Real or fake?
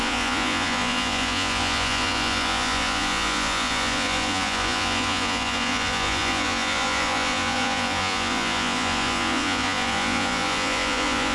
fake